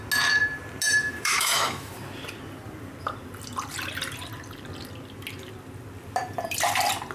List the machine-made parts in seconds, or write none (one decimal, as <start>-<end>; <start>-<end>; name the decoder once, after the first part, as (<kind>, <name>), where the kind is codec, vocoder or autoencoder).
1.0-1.9 (autoencoder, DAC-VAE)